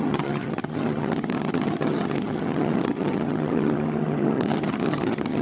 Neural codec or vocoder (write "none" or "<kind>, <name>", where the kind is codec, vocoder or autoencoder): vocoder, HiFi-GAN